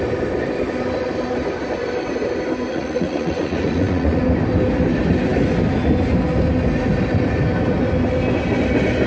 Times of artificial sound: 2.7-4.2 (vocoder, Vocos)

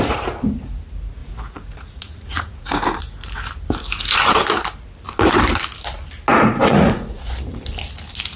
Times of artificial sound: 1.2-3.0 (vocoder, Vocos); 6.3-7.3

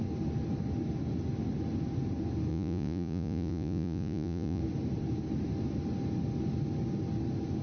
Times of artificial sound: 2.5-4.6 (vocoder, Vocos)

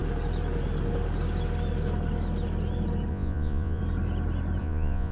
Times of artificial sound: 3.1-3.8 (vocoder, Vocos); 4.6-5.1

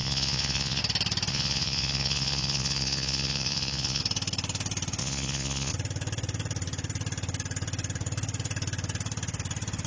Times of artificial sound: 0.0-0.8 (vocoder, Vocos); 1.3-4.0; 5.0-5.7

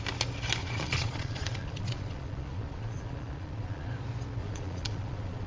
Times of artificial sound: 0.6-3.9 (vocoder, Vocos); 4.4-5.5

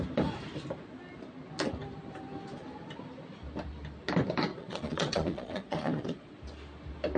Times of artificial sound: 4.5-6.3 (vocoder, Vocos)